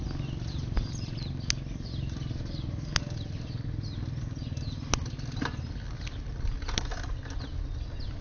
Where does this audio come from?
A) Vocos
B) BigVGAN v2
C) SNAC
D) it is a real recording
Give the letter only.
D